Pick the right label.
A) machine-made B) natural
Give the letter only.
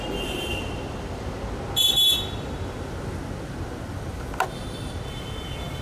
B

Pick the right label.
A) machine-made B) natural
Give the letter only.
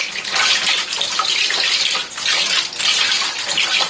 B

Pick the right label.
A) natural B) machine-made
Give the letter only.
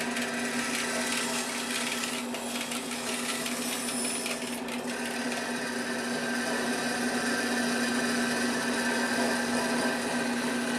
A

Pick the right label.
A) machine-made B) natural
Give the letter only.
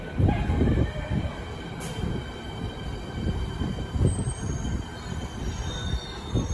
B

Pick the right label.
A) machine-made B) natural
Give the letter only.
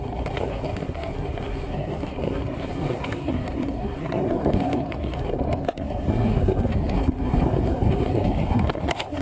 A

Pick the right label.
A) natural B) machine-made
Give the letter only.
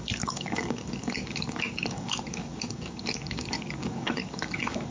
B